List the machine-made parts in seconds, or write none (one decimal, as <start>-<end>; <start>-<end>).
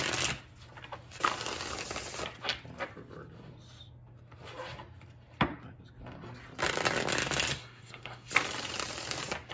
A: 7.6-8.3